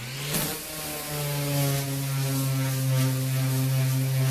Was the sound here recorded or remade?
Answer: recorded